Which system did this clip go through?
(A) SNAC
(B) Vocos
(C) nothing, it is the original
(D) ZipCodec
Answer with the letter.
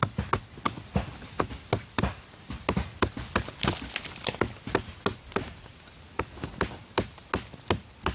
C